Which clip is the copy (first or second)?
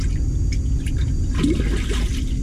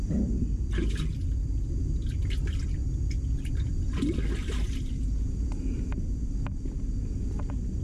second